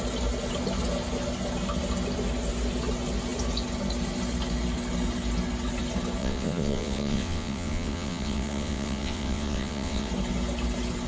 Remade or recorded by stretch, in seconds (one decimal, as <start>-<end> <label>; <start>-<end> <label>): 0.0-6.2 recorded; 6.2-10.1 remade; 10.1-11.1 recorded